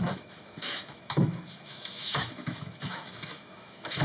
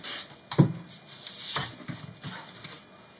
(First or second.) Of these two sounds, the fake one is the first